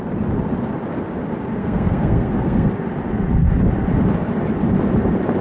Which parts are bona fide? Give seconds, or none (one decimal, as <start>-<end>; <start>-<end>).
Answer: 0.0-1.6; 2.7-5.4